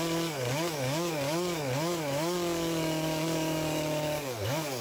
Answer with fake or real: fake